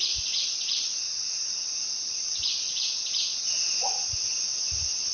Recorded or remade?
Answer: remade